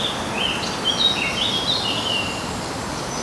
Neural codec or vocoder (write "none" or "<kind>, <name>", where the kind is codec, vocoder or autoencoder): none